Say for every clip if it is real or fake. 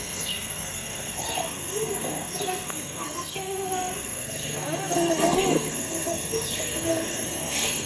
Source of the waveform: fake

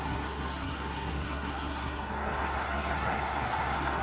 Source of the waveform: fake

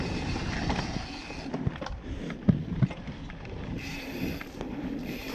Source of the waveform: real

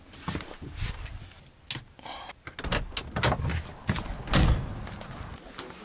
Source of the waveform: real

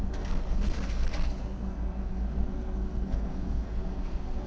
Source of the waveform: fake